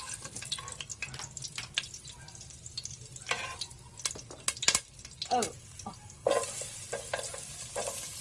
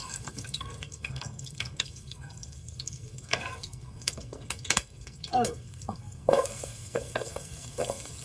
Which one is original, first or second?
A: first